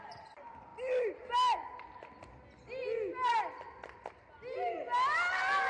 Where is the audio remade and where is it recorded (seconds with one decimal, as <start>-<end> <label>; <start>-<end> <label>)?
0.0-5.7 recorded